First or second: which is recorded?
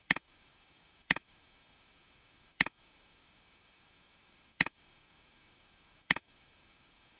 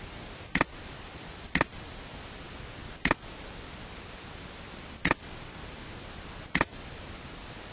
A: second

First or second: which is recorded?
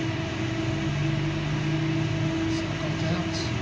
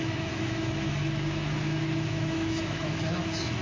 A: first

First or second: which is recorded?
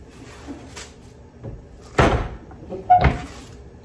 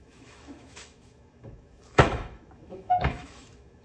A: first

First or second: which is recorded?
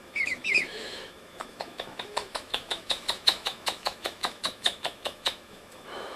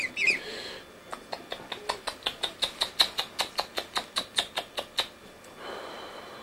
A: second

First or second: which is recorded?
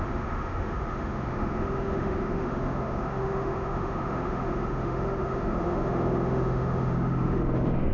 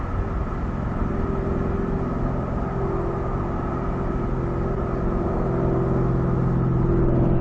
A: second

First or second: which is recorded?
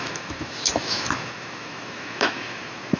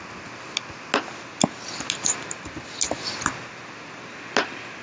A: second